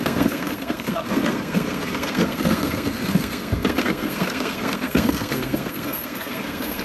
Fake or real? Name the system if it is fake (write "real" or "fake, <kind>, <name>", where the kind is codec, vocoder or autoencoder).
fake, codec, SNAC